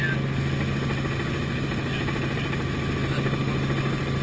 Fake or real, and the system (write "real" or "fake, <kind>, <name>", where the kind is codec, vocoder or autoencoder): real